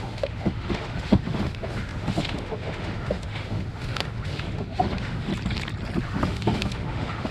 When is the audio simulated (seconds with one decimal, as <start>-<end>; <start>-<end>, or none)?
0.0-5.3; 6.0-7.3